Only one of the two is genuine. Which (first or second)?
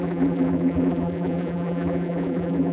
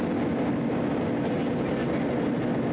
second